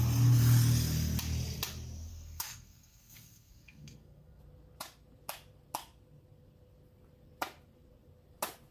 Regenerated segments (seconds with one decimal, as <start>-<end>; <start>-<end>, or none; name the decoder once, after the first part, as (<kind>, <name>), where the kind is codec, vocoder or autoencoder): 2.1-4.4 (codec, SNAC)

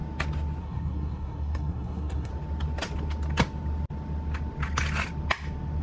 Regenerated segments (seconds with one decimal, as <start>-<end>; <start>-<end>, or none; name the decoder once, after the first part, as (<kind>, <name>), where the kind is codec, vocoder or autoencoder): 0.6-2.3 (codec, SNAC)

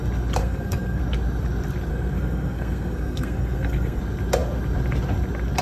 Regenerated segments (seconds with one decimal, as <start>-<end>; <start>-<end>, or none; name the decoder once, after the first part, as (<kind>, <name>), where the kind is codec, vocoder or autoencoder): 0.4-1.0 (codec, SNAC); 1.9-4.0

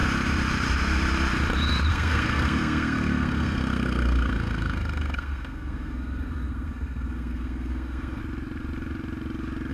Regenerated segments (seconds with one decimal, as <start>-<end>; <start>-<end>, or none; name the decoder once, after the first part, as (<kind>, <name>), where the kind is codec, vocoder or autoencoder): 1.9-8.2 (codec, SNAC)

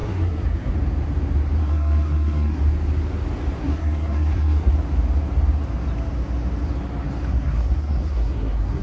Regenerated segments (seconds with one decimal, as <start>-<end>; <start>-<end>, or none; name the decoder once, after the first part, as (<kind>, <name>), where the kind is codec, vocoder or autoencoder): 0.0-0.7 (codec, SNAC); 1.6-2.6; 3.6-4.7; 7.3-8.8

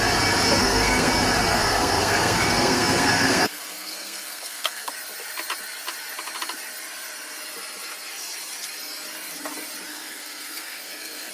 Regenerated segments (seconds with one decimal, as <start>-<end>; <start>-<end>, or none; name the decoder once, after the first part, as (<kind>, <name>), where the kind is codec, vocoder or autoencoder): 0.6-1.1 (codec, SNAC); 1.5-4.9; 9.9-11.3

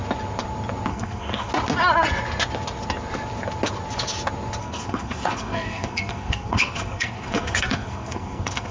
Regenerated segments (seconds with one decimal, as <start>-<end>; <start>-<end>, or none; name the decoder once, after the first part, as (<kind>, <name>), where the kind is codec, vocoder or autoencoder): 0.9-1.5 (codec, SNAC); 4.6-8.7

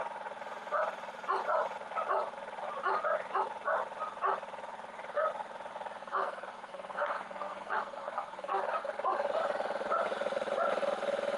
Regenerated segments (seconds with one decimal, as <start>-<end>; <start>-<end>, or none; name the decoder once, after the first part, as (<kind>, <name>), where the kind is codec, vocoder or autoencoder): 6.0-8.6 (codec, SNAC)